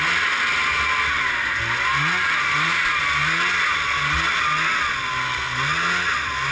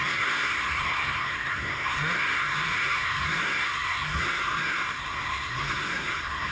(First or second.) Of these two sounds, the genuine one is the first